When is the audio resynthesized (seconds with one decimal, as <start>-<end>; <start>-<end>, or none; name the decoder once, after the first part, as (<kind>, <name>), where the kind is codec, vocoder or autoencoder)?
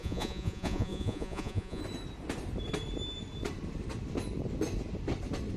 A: 0.0-1.8 (vocoder, Vocos)